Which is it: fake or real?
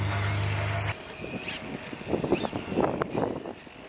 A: real